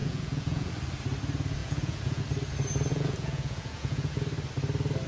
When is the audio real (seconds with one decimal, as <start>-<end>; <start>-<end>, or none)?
0.7-1.6; 2.2-2.9; 4.2-5.1